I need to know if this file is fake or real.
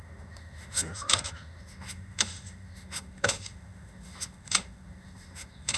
fake